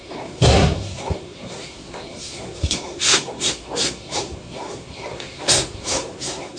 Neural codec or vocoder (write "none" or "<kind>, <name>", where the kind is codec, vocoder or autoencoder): codec, SNAC